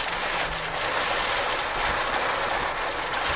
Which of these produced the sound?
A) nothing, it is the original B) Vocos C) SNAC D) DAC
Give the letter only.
A